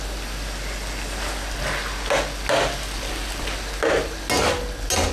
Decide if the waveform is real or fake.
real